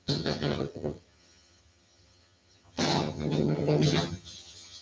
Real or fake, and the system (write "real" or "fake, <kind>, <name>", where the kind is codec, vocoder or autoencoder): fake, vocoder, HiFi-GAN